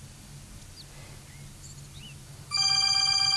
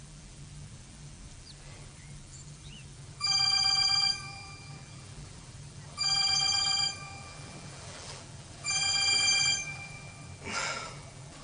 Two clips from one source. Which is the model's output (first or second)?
second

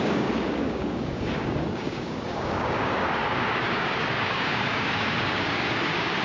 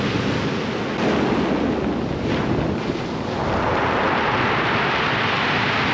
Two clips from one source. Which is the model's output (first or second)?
first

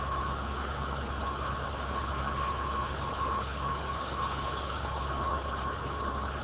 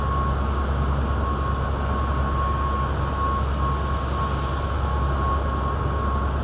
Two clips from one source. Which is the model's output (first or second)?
first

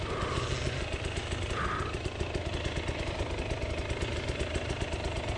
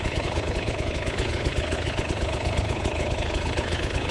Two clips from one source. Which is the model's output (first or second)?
second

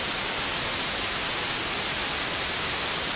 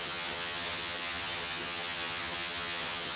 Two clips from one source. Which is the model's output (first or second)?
second